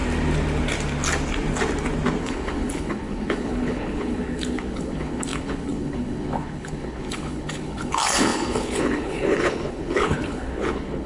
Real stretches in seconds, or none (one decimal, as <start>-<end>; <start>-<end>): 0.0-2.2